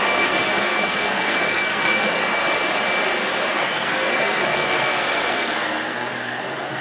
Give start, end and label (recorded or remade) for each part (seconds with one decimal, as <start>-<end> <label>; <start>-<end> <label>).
0.0-2.4 remade; 2.4-3.5 recorded; 3.5-6.8 remade